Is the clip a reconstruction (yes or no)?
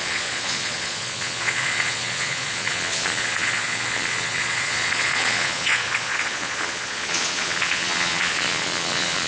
yes